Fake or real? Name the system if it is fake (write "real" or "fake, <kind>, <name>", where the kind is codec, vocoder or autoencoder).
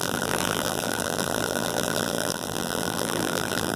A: fake, vocoder, BigVGAN v2